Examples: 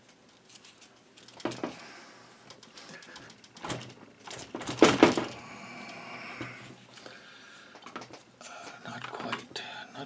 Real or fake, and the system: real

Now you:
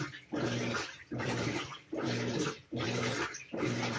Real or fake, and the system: fake, vocoder, BigVGAN v2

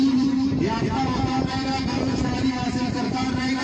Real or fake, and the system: fake, vocoder, BigVGAN v2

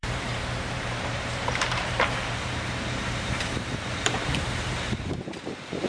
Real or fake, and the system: fake, vocoder, BigVGAN v2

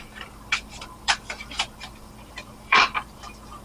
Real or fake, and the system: fake, vocoder, BigVGAN v2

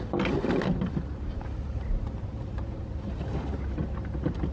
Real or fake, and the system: real